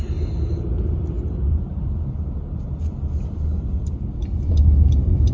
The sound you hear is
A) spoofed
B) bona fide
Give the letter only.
B